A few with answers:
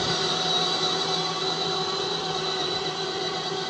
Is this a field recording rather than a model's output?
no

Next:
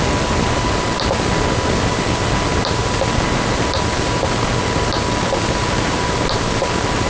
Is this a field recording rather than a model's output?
yes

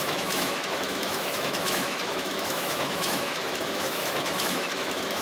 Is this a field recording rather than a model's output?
no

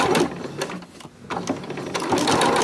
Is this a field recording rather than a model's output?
yes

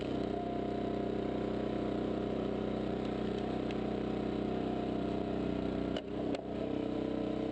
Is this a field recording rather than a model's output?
no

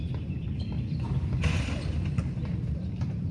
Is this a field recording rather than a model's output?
no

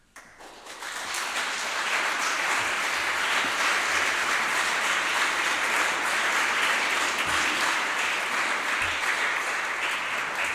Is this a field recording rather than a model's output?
yes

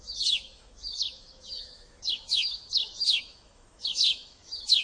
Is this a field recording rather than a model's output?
no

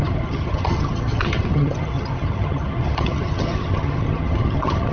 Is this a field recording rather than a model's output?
no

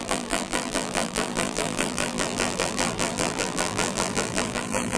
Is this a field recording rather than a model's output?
no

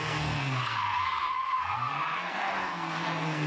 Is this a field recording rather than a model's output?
no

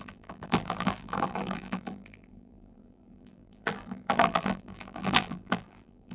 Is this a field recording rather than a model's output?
no